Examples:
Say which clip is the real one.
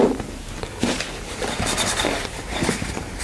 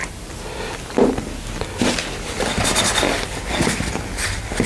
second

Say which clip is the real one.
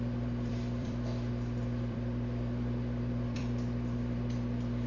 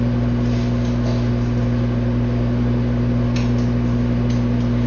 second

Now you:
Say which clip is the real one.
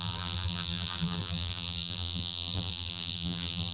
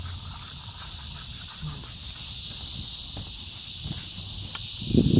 second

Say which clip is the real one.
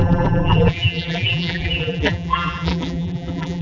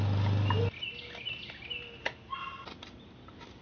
second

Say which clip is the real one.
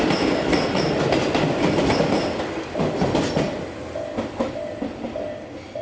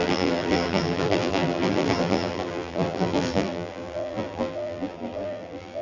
first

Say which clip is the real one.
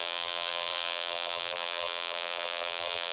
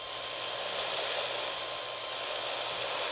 second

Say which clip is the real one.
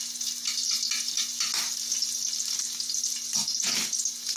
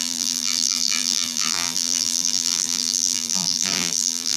first